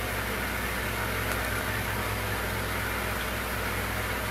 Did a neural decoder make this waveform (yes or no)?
no